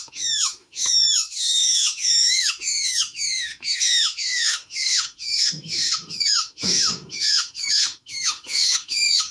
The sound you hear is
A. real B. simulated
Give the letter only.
B